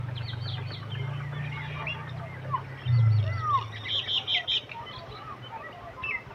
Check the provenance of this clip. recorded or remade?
recorded